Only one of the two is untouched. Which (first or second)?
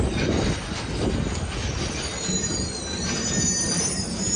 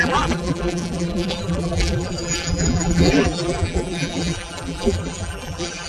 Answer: first